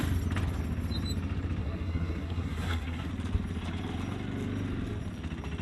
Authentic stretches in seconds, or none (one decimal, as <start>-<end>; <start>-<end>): 0.0-1.6; 3.1-5.6